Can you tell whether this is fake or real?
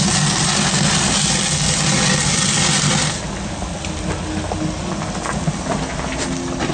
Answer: real